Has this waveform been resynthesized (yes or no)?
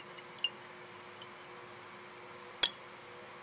no